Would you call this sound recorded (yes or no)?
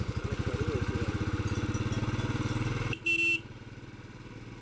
yes